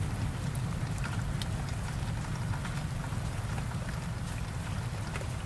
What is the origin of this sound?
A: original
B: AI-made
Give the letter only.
A